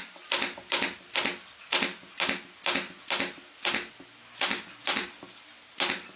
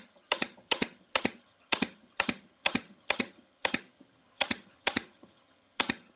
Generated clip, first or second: second